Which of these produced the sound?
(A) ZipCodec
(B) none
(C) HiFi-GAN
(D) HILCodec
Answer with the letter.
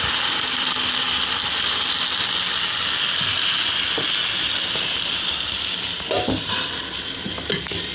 B